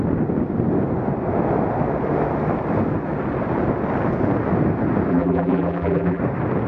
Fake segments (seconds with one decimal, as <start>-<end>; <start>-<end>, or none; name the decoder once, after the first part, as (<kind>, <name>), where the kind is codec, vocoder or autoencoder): 5.1-6.2 (vocoder, BigVGAN v2)